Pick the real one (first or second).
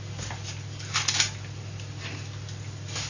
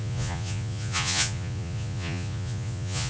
first